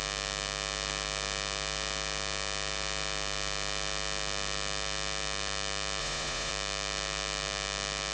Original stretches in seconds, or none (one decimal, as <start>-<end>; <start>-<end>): 0.0-6.0; 6.5-8.1